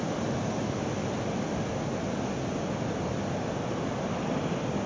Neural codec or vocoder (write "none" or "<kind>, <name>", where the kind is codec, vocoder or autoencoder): none